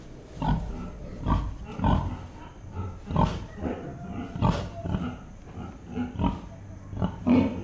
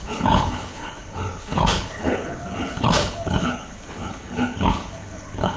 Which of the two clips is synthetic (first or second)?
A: second